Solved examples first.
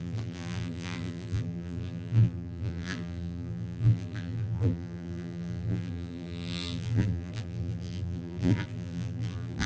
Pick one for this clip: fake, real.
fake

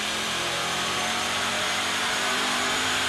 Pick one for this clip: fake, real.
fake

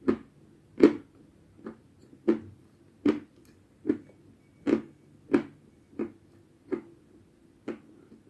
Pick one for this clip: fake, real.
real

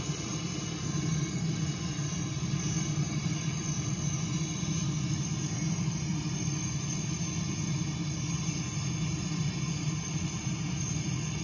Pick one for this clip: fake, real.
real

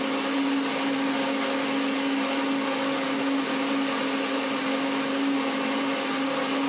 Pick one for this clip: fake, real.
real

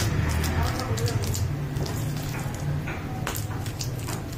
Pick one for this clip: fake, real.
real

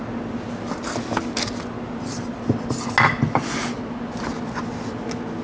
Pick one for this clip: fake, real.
real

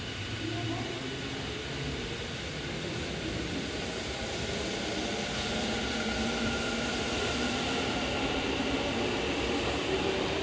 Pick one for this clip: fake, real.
real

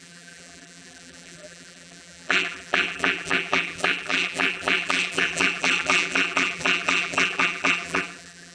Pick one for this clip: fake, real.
fake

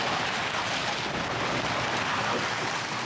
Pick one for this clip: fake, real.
real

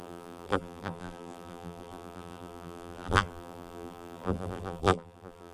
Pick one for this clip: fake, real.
fake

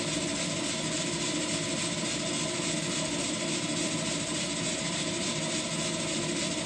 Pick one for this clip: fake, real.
real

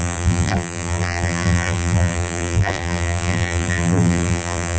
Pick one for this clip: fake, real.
fake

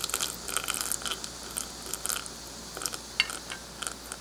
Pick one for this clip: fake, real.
real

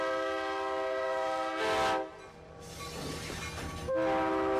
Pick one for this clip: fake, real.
real